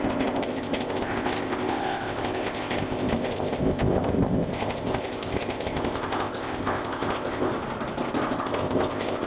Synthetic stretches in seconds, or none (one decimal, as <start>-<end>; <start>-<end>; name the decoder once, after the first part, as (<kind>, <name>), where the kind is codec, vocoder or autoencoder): 0.0-7.5 (codec, ZipCodec); 8.4-9.3